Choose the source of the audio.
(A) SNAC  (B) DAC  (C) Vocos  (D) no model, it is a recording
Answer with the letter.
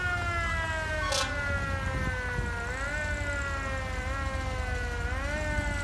D